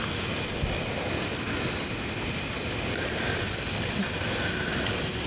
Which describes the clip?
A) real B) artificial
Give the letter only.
A